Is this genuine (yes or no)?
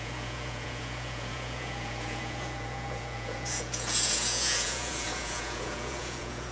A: no